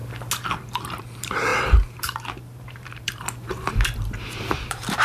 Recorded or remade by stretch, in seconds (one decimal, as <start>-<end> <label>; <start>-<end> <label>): 0.0-1.0 recorded; 1.0-5.0 remade